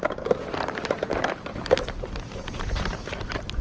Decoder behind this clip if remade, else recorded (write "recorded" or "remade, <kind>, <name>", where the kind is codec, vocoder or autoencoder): remade, vocoder, BigVGAN v2